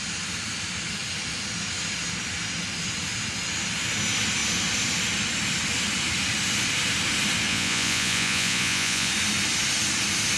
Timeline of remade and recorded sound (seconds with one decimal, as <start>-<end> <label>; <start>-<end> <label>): 0.0-7.5 recorded; 7.5-9.1 remade; 9.1-10.4 recorded